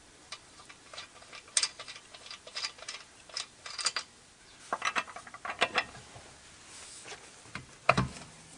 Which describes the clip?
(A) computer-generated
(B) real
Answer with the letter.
B